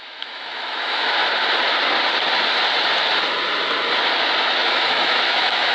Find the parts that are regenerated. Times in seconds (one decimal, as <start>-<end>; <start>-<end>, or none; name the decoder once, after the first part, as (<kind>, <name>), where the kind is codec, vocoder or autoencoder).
0.0-1.2 (autoencoder, DAC-VAE); 4.5-5.7